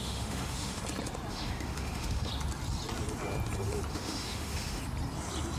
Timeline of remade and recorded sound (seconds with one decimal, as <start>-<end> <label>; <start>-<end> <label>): 0.0-0.8 remade; 0.8-1.3 recorded; 1.3-2.3 remade; 2.3-3.9 recorded; 3.9-4.8 remade; 4.8-5.6 recorded